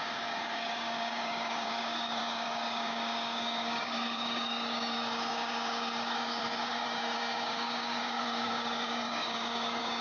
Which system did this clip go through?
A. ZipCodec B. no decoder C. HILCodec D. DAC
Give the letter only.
D